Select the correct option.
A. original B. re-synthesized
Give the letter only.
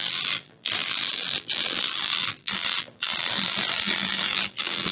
B